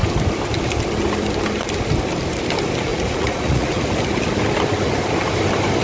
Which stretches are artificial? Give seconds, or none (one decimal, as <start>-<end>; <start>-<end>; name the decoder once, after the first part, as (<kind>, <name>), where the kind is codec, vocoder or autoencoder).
2.9-3.9 (vocoder, Vocos)